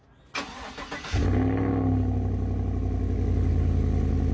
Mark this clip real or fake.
real